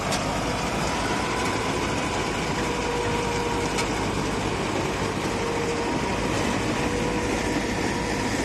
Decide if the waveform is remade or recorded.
recorded